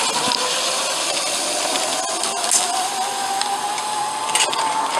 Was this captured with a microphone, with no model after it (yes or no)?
yes